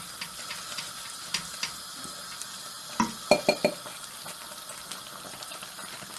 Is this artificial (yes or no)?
no